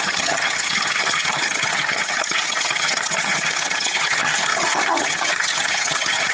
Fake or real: fake